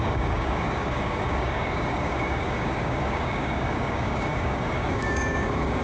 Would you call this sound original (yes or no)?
no